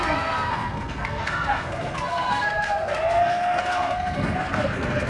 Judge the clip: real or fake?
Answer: fake